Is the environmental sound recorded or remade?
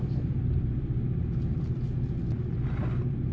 recorded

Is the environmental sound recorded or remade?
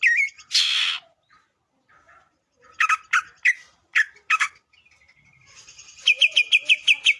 recorded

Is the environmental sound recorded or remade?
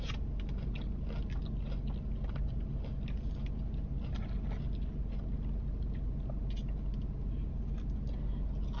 recorded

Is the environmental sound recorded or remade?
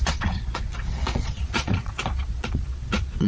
remade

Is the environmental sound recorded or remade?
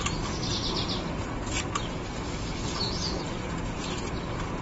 recorded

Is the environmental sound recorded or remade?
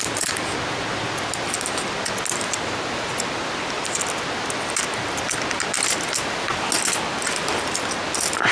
recorded